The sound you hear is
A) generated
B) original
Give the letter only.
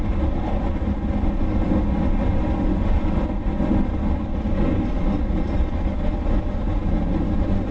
B